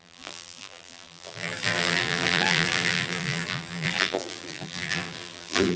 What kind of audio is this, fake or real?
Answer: fake